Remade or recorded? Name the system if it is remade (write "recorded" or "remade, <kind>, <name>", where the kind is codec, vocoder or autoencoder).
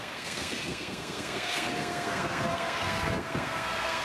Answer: remade, codec, SNAC